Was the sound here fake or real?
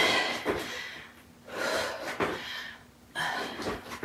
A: fake